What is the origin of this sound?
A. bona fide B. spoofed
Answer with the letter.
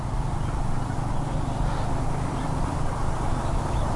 A